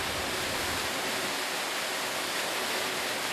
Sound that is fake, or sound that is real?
real